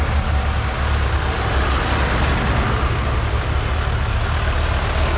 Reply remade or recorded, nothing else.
recorded